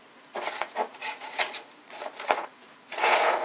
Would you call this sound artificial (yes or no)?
yes